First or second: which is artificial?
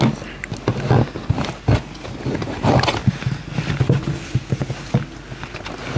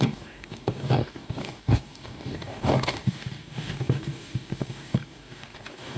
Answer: second